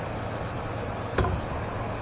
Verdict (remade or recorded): recorded